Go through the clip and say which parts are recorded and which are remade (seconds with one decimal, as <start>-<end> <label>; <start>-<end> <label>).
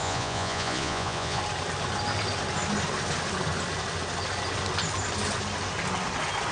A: 0.0-1.4 remade; 1.4-6.5 recorded